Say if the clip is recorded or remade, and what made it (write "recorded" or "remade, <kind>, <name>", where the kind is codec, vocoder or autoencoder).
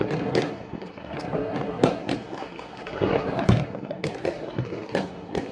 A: remade, codec, SNAC